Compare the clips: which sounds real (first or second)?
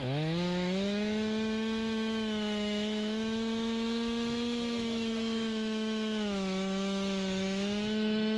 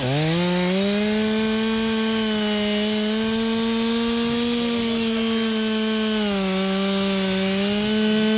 second